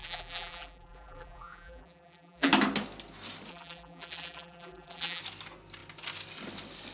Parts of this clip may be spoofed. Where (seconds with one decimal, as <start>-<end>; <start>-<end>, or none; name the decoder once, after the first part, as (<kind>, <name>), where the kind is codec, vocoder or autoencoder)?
0.0-2.5 (vocoder, BigVGAN v2); 3.5-5.2